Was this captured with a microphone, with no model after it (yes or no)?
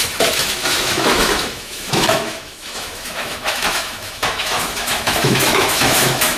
no